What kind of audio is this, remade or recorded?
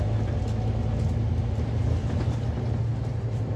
recorded